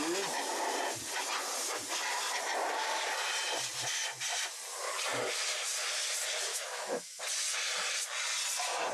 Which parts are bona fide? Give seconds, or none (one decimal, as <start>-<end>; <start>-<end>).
0.0-6.5; 7.2-8.9